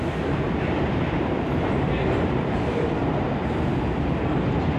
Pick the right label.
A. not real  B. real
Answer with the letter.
A